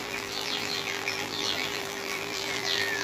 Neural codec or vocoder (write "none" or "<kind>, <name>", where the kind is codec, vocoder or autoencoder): vocoder, BigVGAN v2